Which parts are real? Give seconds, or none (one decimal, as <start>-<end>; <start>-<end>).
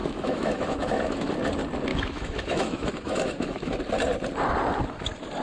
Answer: 1.3-1.9; 3.8-5.4